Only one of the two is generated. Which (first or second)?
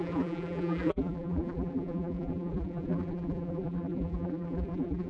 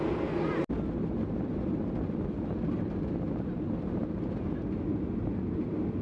first